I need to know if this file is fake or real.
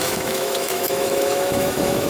fake